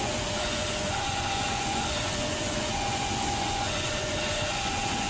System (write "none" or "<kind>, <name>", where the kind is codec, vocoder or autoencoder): vocoder, Vocos